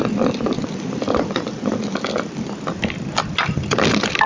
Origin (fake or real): fake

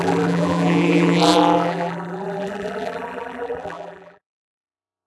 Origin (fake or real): fake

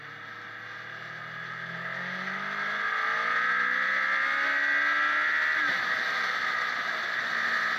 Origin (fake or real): real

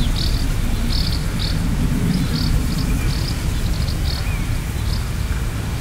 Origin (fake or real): real